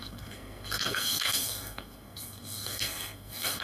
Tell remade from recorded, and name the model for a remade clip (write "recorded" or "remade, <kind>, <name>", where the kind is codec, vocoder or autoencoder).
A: remade, codec, SNAC